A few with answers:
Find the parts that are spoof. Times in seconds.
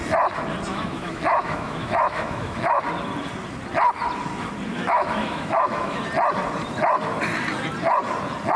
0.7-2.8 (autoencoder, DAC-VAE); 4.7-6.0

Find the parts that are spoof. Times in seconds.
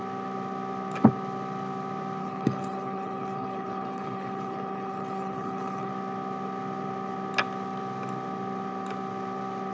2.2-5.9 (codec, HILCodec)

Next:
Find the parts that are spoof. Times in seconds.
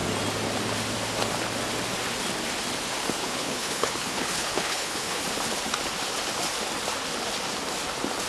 3.2-5.2 (codec, HILCodec)